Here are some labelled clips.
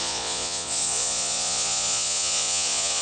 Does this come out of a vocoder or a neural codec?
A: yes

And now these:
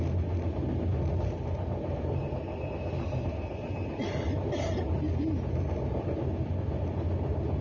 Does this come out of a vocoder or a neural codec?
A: no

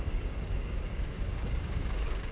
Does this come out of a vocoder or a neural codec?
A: yes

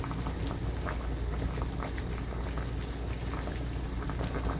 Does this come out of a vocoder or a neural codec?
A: no